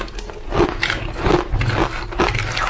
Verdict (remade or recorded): recorded